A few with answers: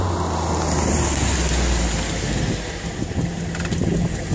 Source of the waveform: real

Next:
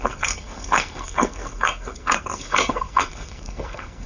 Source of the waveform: fake